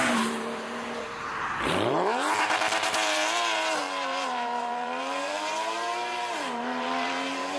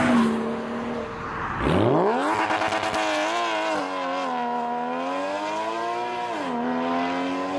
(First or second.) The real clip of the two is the second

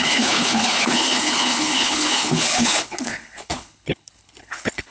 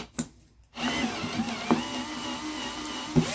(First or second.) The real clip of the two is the second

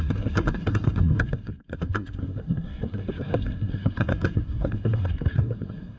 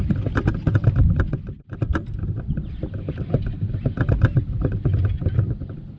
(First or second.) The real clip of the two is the second